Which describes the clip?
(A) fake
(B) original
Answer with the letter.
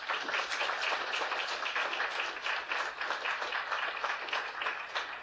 B